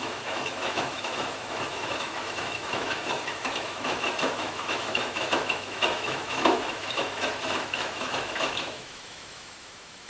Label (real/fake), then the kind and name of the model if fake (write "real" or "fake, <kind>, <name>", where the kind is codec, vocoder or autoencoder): fake, autoencoder, DAC-VAE